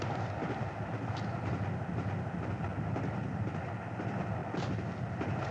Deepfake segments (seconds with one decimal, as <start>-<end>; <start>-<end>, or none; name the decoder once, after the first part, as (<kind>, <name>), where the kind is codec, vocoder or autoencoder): none